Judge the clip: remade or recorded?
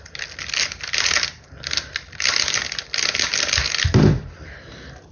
recorded